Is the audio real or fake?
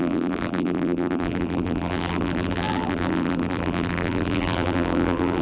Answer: fake